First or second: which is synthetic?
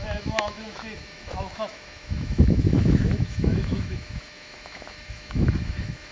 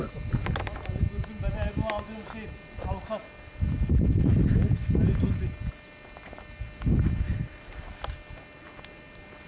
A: first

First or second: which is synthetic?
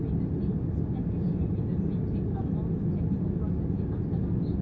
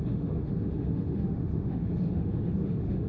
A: second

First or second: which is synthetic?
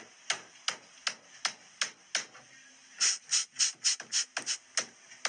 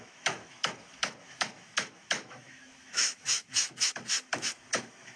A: second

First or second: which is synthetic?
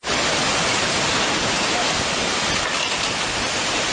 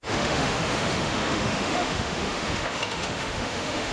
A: second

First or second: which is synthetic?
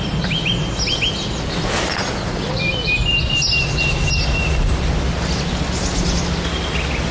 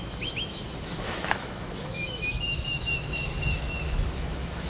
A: second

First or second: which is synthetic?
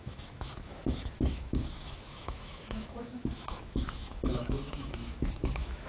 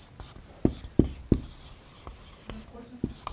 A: first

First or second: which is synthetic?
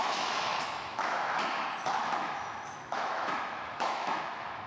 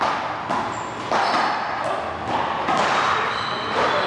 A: first